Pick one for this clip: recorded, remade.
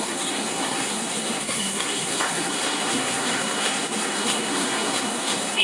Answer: remade